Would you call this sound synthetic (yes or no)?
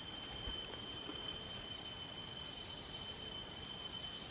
no